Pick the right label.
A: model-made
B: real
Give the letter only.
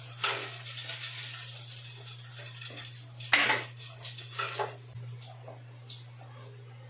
B